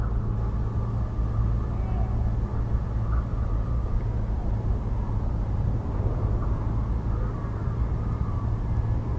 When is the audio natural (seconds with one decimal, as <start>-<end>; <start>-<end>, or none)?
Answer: 0.0-3.3; 6.3-7.6; 8.4-9.2